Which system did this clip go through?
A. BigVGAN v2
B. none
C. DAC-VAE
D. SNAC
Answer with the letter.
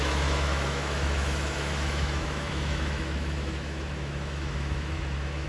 C